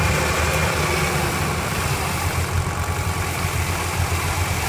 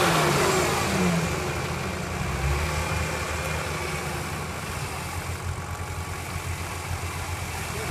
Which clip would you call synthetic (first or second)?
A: first